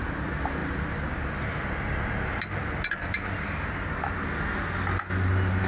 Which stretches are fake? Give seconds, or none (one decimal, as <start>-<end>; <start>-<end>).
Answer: none

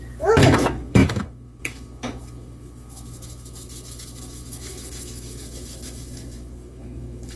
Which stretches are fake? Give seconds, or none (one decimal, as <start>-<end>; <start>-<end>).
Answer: 0.0-7.4

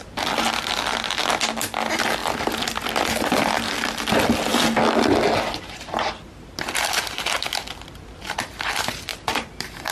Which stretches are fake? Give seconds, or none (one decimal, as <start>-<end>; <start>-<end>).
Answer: 2.2-4.1; 9.1-9.9